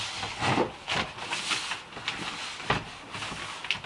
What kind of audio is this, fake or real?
real